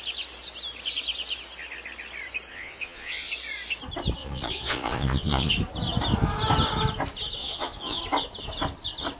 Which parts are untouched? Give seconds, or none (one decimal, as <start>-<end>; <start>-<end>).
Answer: 0.0-2.5; 3.3-4.2; 5.5-7.4; 8.0-9.2